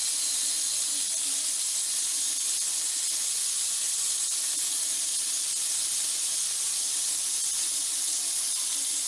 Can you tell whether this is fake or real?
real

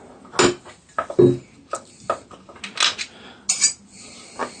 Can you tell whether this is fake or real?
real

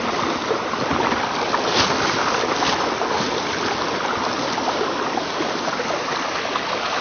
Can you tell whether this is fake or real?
real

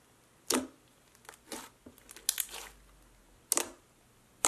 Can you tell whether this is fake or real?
real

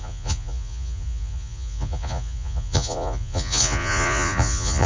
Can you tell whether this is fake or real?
fake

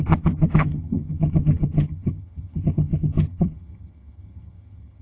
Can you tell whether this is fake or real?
fake